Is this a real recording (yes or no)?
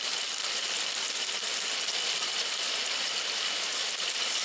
no